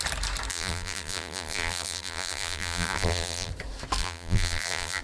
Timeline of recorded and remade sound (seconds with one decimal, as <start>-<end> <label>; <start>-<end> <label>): 0.0-0.5 recorded; 0.5-3.5 remade; 3.5-4.0 recorded; 4.0-5.0 remade